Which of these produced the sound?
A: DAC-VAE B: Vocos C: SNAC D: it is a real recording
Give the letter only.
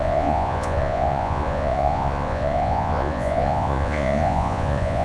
B